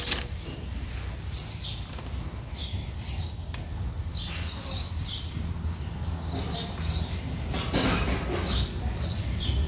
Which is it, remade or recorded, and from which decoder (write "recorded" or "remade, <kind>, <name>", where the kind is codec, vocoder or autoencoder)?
recorded